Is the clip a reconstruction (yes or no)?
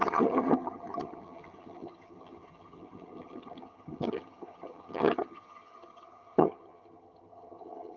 yes